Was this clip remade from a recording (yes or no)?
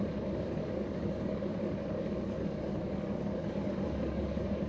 yes